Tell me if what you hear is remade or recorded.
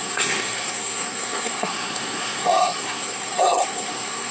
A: remade